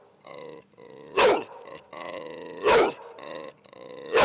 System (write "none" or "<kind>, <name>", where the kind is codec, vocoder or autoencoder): vocoder, BigVGAN v2